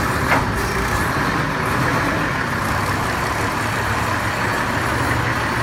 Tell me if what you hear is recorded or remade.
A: recorded